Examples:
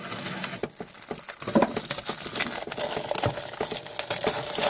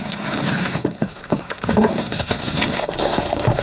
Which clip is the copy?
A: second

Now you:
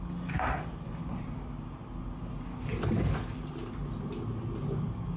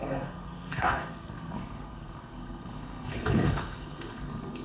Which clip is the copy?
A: second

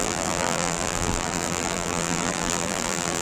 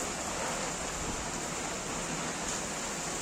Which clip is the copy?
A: first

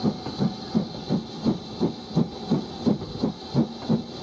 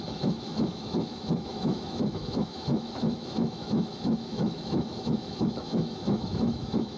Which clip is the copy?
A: second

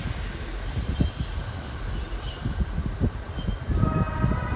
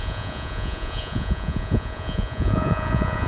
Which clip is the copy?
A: second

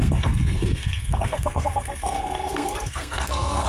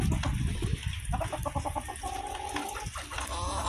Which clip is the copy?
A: first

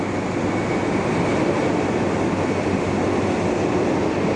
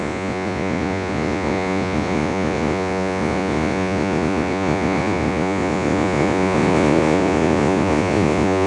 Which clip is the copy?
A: second